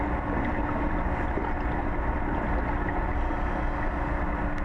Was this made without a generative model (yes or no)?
yes